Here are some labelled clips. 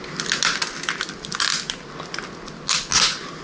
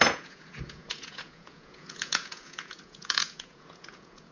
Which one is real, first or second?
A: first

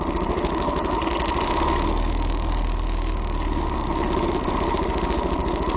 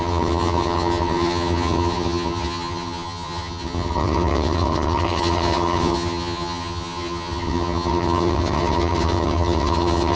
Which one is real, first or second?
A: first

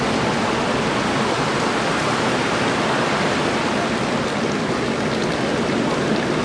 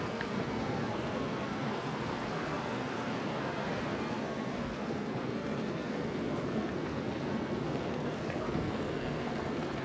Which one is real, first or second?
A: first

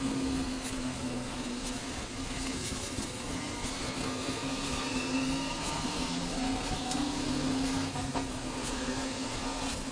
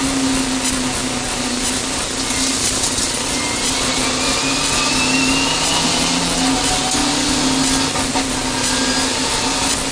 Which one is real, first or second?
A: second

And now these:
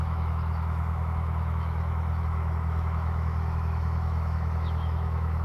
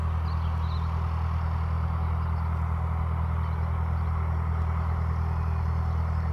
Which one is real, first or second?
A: second